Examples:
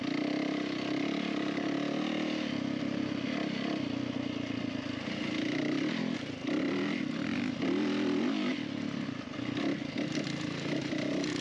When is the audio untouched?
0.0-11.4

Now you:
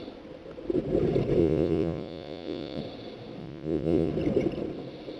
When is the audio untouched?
0.0-1.4; 2.8-3.4; 4.1-5.2